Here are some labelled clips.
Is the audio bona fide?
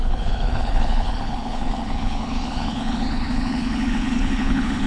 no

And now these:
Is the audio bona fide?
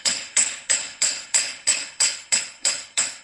no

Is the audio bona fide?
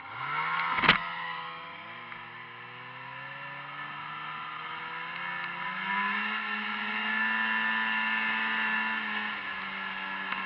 yes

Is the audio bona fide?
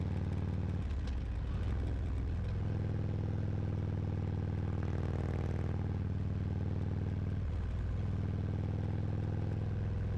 yes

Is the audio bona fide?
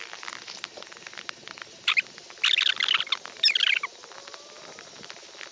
yes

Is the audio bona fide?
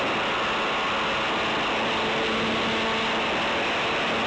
yes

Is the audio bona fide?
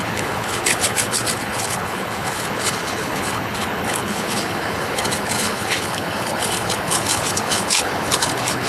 no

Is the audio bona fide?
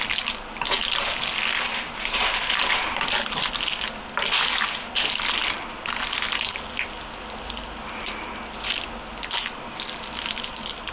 yes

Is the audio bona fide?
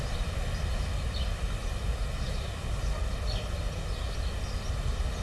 yes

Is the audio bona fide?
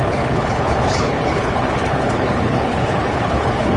no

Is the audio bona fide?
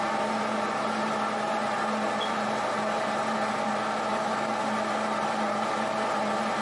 yes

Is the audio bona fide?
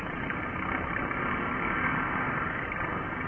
yes